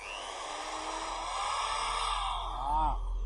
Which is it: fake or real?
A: real